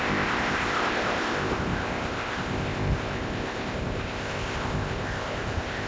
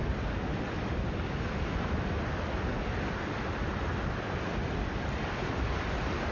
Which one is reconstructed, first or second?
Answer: first